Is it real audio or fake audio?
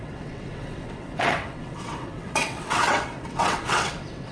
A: fake